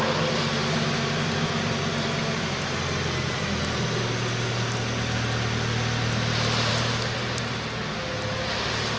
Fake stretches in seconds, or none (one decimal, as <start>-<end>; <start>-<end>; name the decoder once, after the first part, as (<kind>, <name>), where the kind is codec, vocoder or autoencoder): none